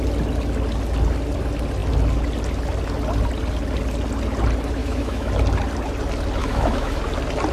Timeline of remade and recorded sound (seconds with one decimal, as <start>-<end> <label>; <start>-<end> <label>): 0.0-4.8 recorded; 4.8-5.3 remade; 5.3-6.4 recorded; 6.4-7.0 remade; 7.0-7.5 recorded